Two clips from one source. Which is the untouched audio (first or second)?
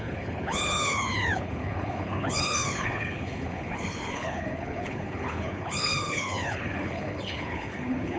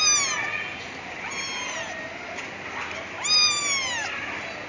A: second